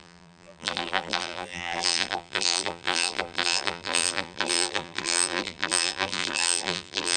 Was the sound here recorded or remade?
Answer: remade